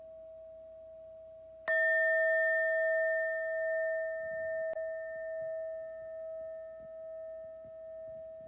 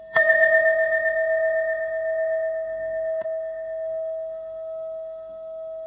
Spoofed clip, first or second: second